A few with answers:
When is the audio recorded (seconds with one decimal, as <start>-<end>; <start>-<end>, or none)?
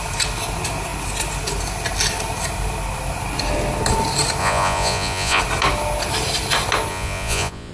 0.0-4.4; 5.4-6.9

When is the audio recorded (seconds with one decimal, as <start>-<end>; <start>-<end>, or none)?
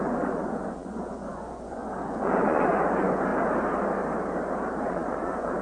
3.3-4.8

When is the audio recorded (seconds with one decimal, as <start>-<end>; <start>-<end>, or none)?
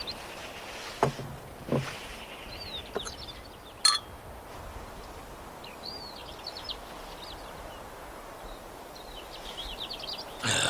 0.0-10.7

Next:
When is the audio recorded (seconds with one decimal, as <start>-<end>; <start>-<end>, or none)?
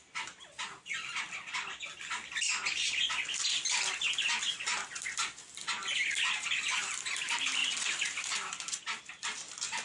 0.0-9.8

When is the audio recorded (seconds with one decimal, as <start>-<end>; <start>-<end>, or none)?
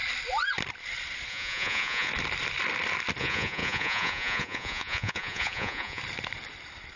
0.0-1.3; 2.1-3.2; 6.0-7.0